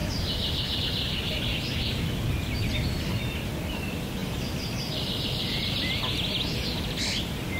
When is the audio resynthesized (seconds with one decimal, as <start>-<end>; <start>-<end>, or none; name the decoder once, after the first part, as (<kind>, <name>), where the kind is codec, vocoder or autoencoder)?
0.0-0.8 (vocoder, BigVGAN v2); 4.2-6.0